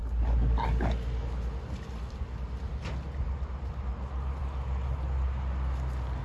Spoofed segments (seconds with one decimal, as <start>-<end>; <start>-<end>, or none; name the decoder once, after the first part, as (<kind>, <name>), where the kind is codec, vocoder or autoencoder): none

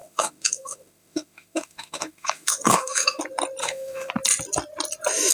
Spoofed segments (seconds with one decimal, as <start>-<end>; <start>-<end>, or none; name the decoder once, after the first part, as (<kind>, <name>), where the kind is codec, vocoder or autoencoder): 0.0-3.2 (autoencoder, DAC-VAE); 3.6-4.1

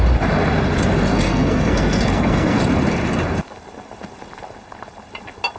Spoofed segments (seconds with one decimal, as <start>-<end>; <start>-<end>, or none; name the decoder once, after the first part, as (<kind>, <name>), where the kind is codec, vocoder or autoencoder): 1.1-2.6 (codec, SNAC)